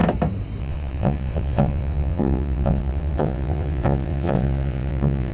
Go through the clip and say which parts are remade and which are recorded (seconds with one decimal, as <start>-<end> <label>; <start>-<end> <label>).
0.0-0.6 recorded; 0.6-5.3 remade